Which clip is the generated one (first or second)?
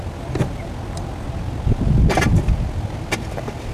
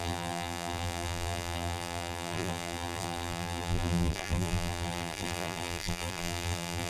second